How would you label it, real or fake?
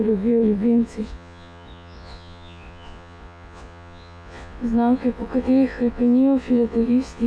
fake